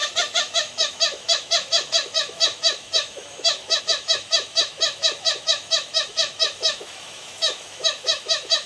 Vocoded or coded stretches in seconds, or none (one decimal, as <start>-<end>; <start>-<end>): 0.0-8.7